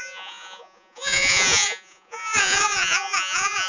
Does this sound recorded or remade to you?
remade